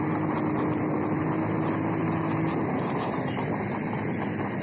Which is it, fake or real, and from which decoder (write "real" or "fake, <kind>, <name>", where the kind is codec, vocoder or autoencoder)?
real